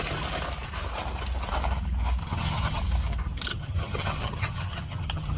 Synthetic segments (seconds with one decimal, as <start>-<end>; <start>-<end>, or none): 2.2-2.8; 3.5-5.4